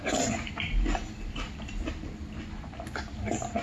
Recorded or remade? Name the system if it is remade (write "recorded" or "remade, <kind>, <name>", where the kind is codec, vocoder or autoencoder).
recorded